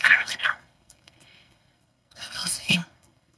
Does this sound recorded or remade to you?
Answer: remade